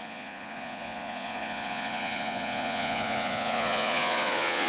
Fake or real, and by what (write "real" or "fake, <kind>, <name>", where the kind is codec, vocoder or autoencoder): fake, vocoder, Vocos